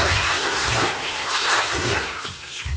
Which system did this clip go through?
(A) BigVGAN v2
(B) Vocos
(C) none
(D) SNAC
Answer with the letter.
D